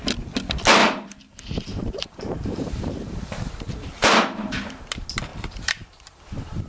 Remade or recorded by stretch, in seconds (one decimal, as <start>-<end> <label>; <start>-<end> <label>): 0.0-0.8 recorded; 0.8-4.8 remade; 4.8-5.3 recorded; 5.3-6.7 remade